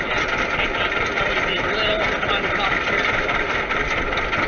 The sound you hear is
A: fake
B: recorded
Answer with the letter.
B